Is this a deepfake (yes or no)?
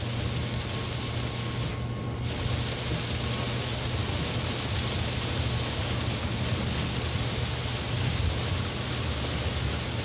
no